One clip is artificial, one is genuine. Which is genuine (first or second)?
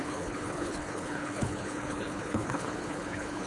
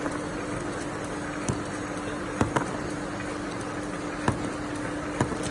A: second